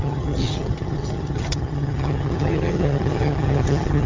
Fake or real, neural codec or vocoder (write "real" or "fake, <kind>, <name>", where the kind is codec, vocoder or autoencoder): fake, vocoder, HiFi-GAN